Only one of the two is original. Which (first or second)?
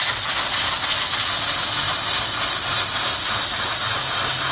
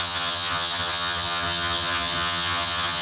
first